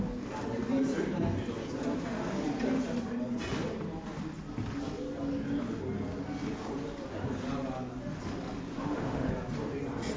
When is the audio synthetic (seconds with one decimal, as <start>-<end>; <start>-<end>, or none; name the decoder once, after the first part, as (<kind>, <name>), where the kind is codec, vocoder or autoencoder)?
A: 8.7-9.3 (autoencoder, DAC-VAE)